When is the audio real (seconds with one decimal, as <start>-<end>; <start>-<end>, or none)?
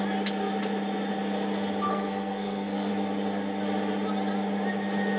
0.0-1.9; 2.9-5.2